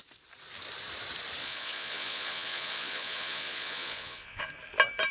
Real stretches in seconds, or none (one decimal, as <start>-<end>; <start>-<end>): 0.0-1.4; 4.5-5.1